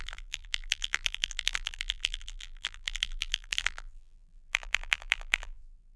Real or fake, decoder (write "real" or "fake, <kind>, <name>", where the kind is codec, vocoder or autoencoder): fake, vocoder, BigVGAN v2